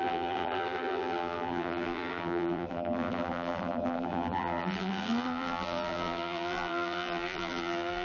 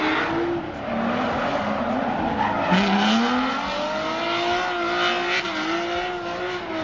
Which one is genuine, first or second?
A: second